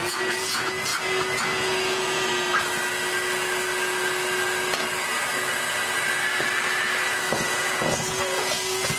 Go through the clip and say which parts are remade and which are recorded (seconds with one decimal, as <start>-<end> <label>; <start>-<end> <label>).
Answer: 0.0-2.3 remade; 2.3-7.1 recorded; 7.1-9.0 remade